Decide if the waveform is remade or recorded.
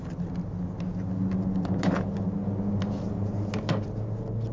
recorded